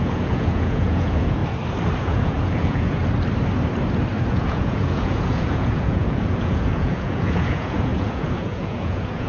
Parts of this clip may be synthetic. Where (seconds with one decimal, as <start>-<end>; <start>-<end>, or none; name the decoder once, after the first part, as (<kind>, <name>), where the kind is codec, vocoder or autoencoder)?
0.0-1.4 (vocoder, Vocos); 2.0-3.0; 4.3-9.3